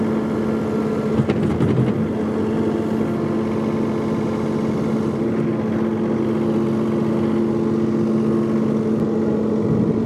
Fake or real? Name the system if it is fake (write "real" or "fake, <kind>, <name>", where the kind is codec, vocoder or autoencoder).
real